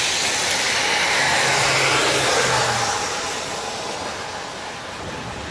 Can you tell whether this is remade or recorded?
recorded